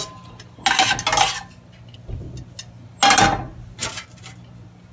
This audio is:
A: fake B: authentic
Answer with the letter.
B